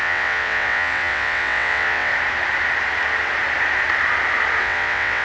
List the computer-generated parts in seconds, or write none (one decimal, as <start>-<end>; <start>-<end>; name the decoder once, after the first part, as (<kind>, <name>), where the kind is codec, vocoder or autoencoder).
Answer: 0.0-2.1 (vocoder, WaveNeXt); 4.6-5.2